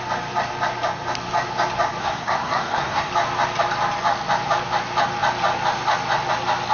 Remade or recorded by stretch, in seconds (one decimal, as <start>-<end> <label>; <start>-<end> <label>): 0.0-2.0 recorded; 2.0-3.1 remade; 3.1-6.7 recorded